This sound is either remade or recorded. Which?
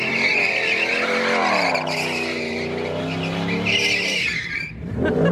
recorded